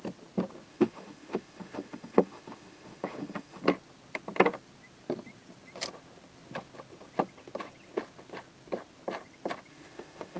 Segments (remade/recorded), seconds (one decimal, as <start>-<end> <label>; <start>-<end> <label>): 0.0-0.7 recorded; 0.7-3.6 remade; 3.6-9.7 recorded; 9.7-10.4 remade